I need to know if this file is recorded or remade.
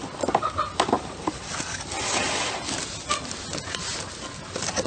recorded